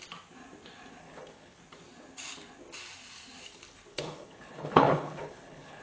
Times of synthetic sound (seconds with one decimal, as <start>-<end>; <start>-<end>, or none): 1.0-1.6; 3.9-5.8